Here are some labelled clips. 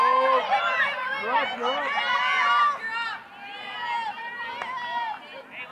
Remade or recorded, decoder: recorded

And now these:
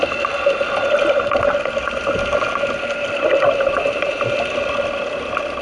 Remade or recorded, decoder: recorded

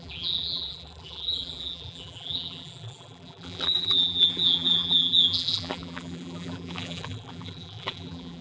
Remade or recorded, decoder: remade, vocoder, BigVGAN v2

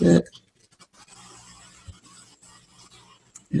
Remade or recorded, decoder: remade, vocoder, BigVGAN v2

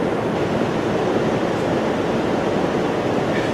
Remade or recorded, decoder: recorded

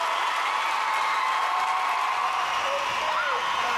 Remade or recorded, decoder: recorded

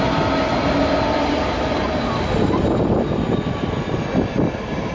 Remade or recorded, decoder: recorded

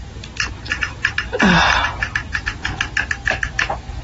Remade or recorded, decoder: recorded